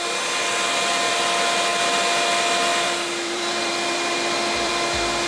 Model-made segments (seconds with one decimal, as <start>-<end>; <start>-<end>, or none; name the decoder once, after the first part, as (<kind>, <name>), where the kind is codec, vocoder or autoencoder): 2.7-4.7 (vocoder, BigVGAN v2)